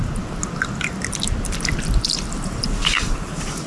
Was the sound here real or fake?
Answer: real